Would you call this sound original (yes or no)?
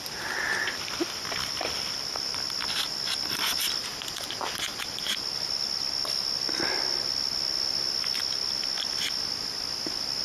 yes